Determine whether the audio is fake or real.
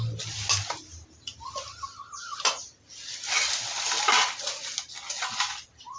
real